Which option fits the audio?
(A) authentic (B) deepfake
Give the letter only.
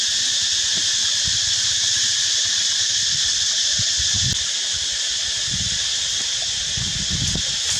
A